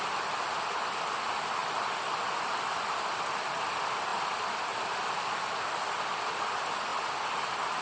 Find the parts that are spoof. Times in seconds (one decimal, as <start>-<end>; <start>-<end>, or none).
none